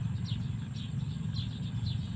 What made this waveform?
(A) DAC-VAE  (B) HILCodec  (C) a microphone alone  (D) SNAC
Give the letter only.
C